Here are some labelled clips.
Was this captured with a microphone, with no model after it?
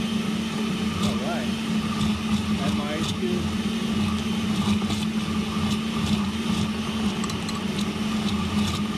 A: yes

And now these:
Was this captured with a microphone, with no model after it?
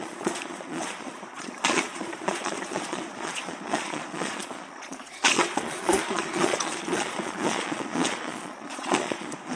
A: no